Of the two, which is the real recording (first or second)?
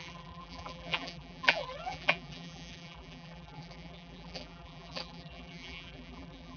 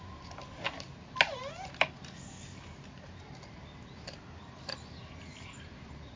second